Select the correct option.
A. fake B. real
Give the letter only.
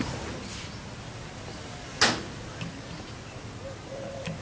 B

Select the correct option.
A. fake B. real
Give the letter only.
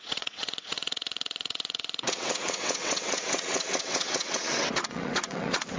A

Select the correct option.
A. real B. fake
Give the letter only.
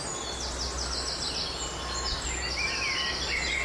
A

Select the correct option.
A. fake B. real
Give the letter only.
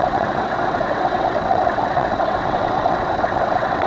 A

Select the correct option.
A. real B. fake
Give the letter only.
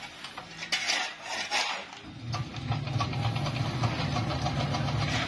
A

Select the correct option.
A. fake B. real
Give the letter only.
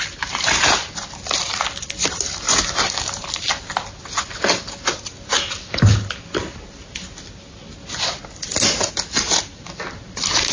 B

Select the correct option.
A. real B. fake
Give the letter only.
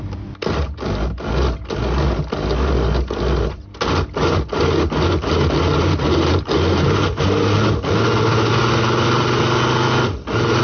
A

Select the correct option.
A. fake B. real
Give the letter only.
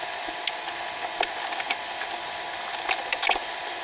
B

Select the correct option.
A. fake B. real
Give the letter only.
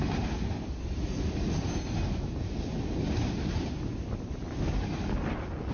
B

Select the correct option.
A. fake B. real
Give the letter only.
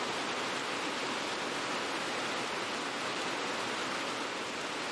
B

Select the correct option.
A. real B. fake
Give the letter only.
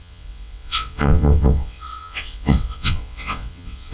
B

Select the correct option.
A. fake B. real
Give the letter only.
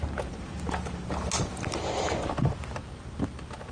B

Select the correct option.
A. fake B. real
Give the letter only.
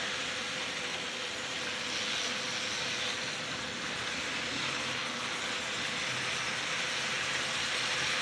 B